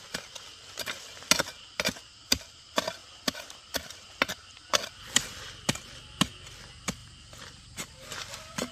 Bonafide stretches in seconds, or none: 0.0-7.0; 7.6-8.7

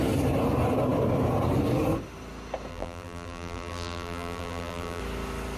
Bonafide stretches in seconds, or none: 0.0-2.7; 5.0-5.6

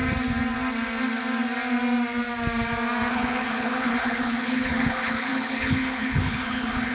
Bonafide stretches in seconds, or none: 0.0-3.1

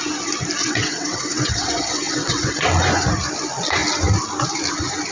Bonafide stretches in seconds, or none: 0.0-0.6; 2.7-5.1

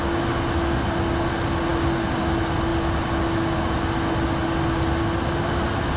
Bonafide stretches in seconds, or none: 0.0-6.0

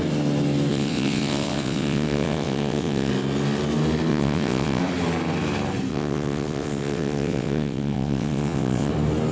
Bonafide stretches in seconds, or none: 0.0-0.7; 3.1-4.1; 4.8-5.9; 8.9-9.3